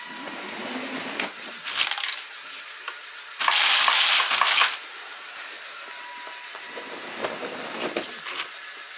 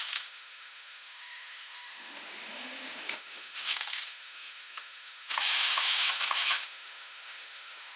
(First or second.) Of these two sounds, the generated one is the second